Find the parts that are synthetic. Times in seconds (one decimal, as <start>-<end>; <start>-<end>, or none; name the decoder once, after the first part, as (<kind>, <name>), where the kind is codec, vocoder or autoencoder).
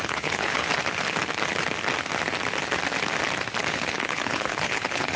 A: 0.0-0.7 (codec, HILCodec); 3.7-5.2